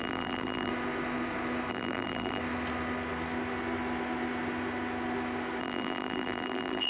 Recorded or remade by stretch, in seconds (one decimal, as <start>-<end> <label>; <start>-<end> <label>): 0.0-0.7 remade; 0.7-1.7 recorded; 1.7-2.4 remade; 2.4-5.6 recorded; 5.6-6.9 remade